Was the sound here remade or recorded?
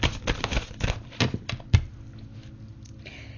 recorded